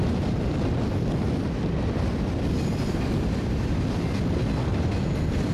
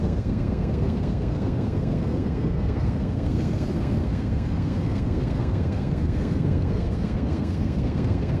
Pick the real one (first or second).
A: first